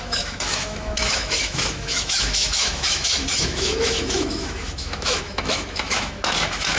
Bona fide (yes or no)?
no